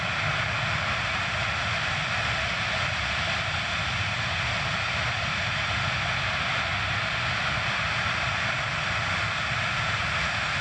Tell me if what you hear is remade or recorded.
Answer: recorded